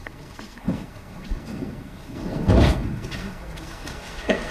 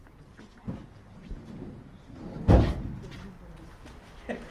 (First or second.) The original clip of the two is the second